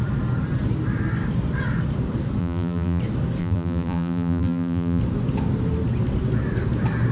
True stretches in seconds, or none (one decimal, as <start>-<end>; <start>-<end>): 0.0-2.4; 3.0-3.4; 5.0-7.1